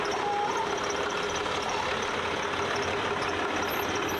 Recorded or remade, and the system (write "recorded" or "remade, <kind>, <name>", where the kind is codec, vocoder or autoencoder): recorded